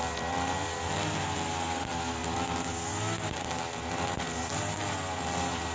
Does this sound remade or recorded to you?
recorded